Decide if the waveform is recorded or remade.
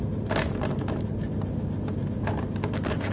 recorded